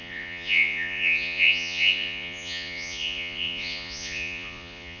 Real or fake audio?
fake